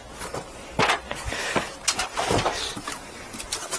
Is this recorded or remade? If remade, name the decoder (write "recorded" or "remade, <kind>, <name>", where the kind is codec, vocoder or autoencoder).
recorded